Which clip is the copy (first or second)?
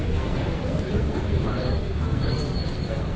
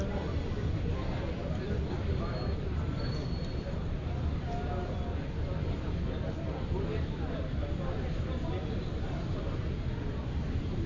first